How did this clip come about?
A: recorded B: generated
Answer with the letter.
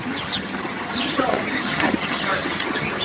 B